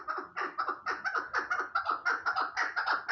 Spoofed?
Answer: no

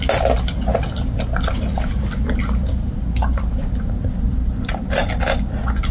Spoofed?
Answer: yes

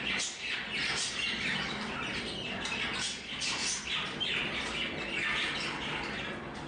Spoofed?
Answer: no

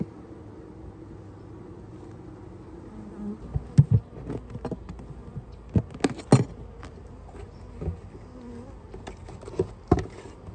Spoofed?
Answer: no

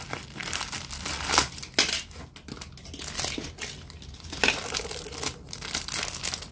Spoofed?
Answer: no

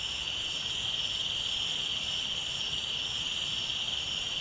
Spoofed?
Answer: no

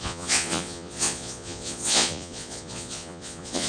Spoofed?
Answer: yes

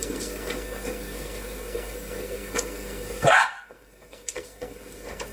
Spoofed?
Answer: yes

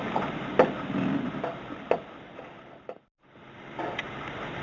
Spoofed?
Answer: no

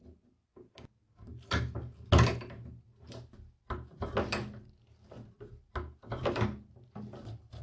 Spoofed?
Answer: no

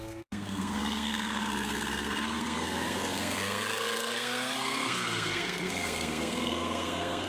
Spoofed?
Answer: yes